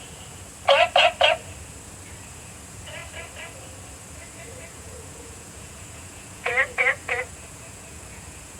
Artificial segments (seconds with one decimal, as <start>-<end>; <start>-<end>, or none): 0.0-0.5; 2.3-3.0; 4.2-8.6